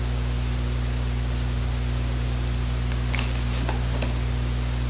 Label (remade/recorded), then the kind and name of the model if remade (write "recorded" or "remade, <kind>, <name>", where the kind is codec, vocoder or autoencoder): recorded